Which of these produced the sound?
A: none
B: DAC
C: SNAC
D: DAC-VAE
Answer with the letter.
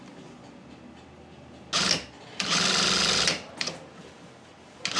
A